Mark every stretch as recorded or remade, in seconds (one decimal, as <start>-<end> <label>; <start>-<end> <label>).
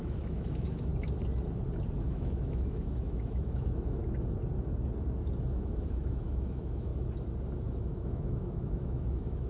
0.0-0.9 remade; 0.9-2.0 recorded; 2.0-4.0 remade; 4.0-5.4 recorded; 5.4-6.9 remade; 6.9-7.6 recorded; 7.6-9.5 remade